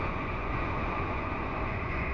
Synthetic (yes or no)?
yes